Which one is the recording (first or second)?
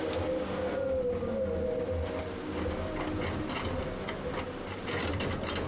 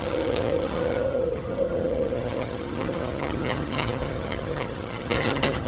first